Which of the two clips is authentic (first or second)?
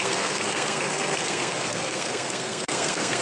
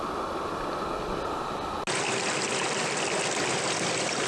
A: second